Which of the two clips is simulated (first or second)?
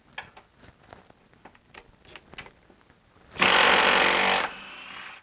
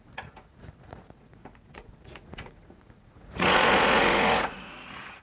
second